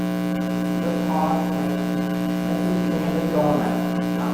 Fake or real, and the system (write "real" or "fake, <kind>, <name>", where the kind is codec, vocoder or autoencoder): real